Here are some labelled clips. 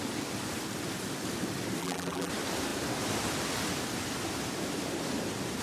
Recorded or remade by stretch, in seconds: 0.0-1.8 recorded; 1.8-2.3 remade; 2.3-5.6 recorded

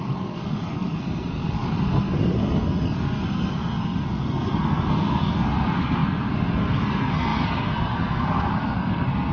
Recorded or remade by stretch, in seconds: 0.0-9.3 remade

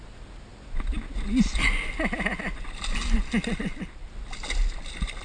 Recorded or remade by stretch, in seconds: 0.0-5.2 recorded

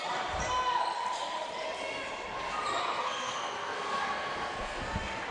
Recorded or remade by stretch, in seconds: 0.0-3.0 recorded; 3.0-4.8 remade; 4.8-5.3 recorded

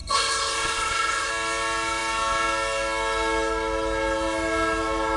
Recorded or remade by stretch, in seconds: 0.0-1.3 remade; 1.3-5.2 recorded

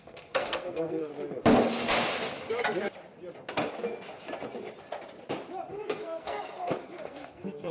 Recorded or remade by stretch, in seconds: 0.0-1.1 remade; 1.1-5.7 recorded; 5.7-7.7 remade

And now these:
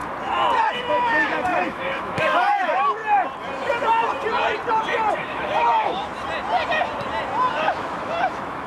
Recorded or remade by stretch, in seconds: 0.0-0.7 recorded; 0.7-3.0 remade; 3.0-5.1 recorded; 5.1-6.1 remade; 6.1-7.5 recorded; 7.5-8.7 remade

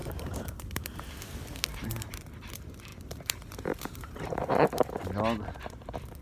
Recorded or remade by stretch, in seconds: 0.0-1.0 remade; 1.0-1.7 recorded; 1.7-2.2 remade; 2.2-2.9 recorded; 2.9-4.9 remade; 4.9-6.2 recorded